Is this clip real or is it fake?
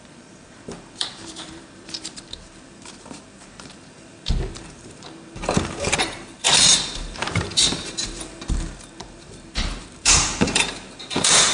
fake